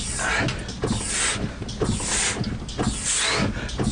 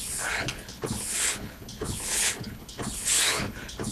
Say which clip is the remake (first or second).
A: second